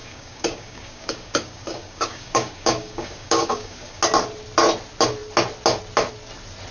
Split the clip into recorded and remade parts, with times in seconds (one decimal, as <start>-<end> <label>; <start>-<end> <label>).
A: 0.0-4.0 remade; 4.0-6.7 recorded